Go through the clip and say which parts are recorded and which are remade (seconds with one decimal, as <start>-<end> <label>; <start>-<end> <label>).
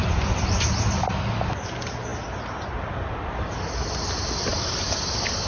0.0-1.1 remade; 1.1-5.5 recorded